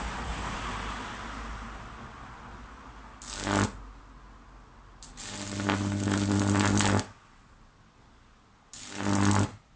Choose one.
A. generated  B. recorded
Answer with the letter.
B